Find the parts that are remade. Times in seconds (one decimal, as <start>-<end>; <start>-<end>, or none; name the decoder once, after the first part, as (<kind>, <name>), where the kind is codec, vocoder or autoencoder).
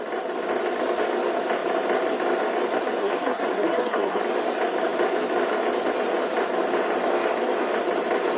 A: 3.0-4.2 (codec, SNAC)